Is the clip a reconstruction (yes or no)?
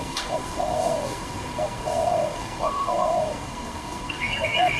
yes